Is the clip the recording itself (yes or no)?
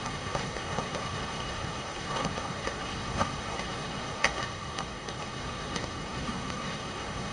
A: no